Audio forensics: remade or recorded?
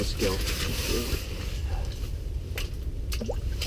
recorded